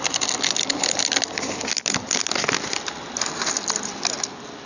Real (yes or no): yes